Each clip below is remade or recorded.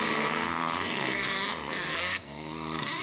remade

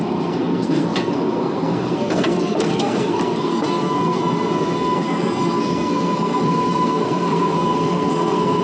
remade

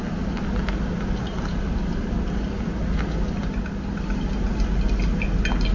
recorded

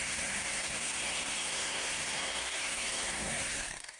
remade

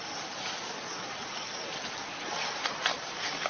recorded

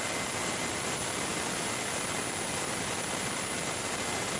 recorded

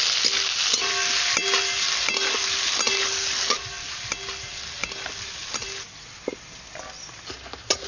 recorded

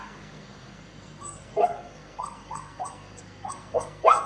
remade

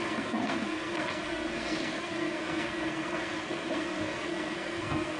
remade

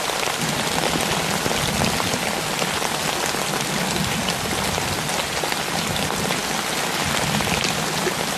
recorded